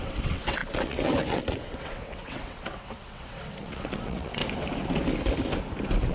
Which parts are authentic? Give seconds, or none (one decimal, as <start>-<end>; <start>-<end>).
4.4-6.1